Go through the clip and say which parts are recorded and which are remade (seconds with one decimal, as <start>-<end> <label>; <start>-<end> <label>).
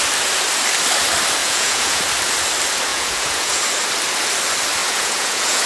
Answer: 0.0-1.4 recorded; 1.4-2.0 remade; 2.0-2.9 recorded; 2.9-3.6 remade; 3.6-4.8 recorded; 4.8-5.7 remade